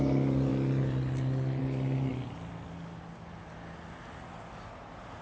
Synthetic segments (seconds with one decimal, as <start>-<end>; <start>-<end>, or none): none